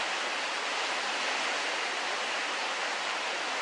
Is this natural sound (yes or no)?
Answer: yes